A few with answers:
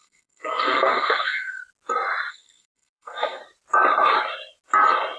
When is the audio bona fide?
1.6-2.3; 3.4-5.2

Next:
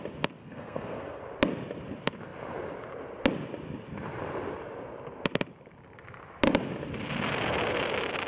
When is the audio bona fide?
0.0-0.4; 1.2-8.3

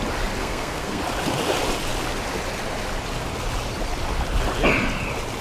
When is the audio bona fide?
0.0-0.4; 1.0-5.4